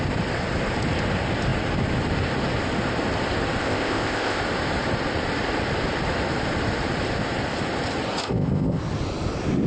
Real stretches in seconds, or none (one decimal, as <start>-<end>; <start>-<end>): 0.0-3.6; 4.4-8.2; 8.8-9.7

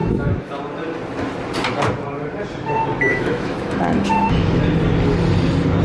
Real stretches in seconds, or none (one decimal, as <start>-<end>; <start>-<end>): 0.6-3.1; 4.6-5.8

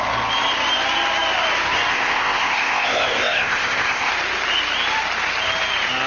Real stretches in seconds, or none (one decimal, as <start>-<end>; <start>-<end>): 0.0-1.9; 4.1-6.1

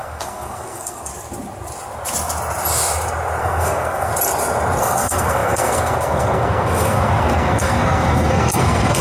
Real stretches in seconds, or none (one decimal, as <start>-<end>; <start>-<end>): 1.1-3.4; 4.1-4.8

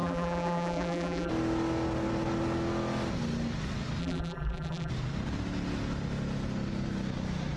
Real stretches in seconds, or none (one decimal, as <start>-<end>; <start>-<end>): 1.3-4.0; 4.9-7.6

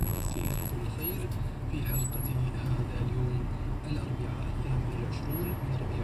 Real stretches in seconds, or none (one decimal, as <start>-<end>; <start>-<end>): 0.7-6.0

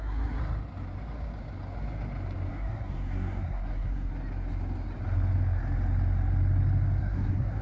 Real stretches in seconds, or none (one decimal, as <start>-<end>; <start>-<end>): 0.4-2.5; 4.1-7.0